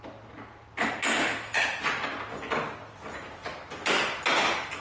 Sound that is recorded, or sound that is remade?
recorded